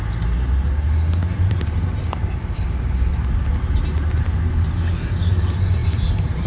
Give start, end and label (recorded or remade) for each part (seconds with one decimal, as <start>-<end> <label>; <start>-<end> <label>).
0.0-1.2 recorded; 1.2-3.8 remade; 3.8-5.8 recorded; 5.8-6.5 remade